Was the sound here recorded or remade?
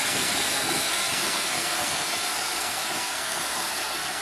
remade